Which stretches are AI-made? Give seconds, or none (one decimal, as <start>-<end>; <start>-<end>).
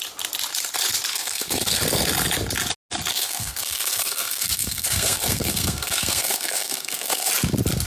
1.1-1.8; 3.1-7.3